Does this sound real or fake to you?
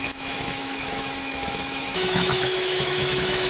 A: fake